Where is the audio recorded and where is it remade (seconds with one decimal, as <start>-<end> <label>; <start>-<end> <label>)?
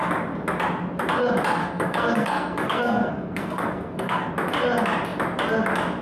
0.0-1.6 recorded; 1.6-4.3 remade; 4.3-6.0 recorded